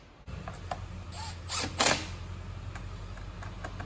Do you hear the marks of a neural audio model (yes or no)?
no